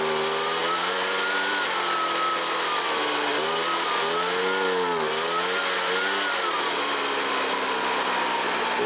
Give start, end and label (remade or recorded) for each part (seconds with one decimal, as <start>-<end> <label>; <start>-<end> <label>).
0.0-0.6 recorded; 0.6-1.8 remade; 1.8-8.9 recorded